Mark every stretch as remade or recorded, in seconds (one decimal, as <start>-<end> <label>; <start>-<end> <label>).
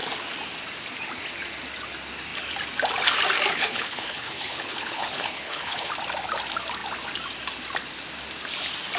0.0-3.5 recorded; 3.5-5.9 remade; 5.9-9.0 recorded